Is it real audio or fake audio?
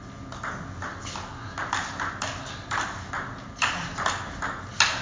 real